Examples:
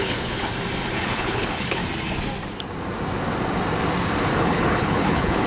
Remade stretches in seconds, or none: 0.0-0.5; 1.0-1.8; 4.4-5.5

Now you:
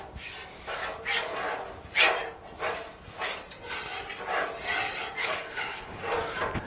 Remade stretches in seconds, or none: 5.2-6.0